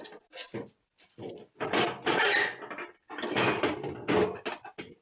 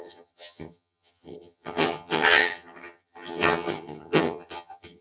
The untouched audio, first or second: first